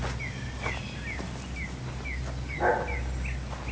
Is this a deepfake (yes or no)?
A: no